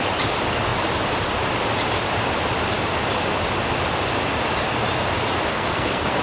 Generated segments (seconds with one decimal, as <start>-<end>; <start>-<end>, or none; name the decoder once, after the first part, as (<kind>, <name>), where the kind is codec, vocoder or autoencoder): 5.5-6.2 (codec, SNAC)